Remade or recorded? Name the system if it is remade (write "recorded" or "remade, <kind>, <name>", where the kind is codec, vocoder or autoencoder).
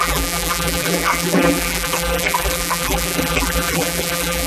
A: remade, vocoder, BigVGAN v2